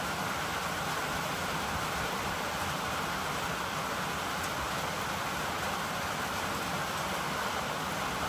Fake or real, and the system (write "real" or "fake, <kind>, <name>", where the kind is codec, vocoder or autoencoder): real